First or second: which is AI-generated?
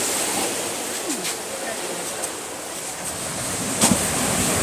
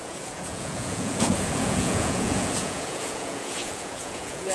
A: second